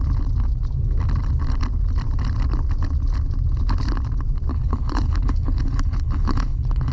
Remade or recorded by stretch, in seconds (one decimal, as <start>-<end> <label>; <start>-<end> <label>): 0.0-4.5 recorded; 4.5-6.9 remade